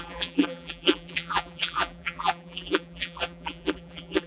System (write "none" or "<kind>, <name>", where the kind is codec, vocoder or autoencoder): vocoder, BigVGAN v2